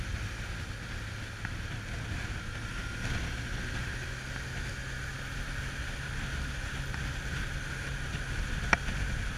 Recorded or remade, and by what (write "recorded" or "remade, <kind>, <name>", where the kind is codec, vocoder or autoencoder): recorded